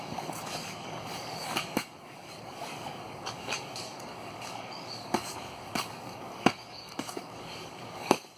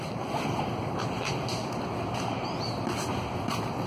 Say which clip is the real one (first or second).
second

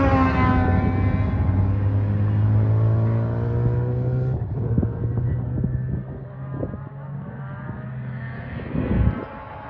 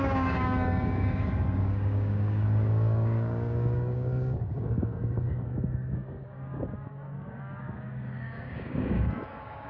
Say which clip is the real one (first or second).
first